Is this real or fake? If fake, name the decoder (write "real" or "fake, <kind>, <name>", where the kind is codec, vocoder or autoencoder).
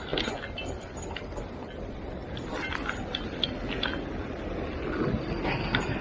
real